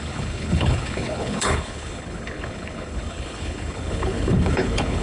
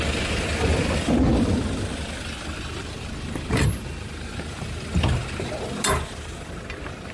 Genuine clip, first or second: second